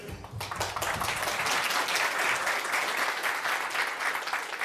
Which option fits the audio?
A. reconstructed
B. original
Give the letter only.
B